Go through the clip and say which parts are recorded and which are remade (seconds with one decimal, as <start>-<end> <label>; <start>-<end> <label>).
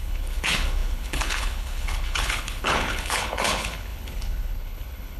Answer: 0.0-5.2 remade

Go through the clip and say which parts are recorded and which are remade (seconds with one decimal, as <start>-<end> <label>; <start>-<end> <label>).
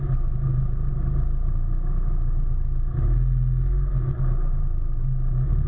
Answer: 0.0-5.7 recorded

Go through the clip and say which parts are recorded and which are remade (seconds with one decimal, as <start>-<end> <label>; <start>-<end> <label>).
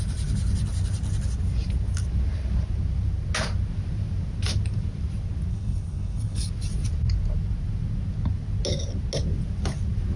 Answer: 0.0-5.5 recorded; 5.5-6.5 remade; 6.5-10.2 recorded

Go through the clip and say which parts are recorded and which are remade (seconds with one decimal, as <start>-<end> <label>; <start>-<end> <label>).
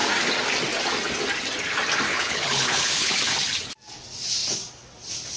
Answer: 0.0-2.1 recorded; 2.1-3.1 remade; 3.1-5.4 recorded